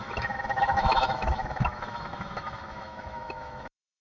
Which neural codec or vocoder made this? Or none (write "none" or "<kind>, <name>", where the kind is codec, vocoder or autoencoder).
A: autoencoder, DAC-VAE